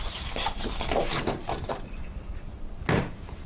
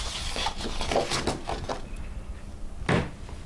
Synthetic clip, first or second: first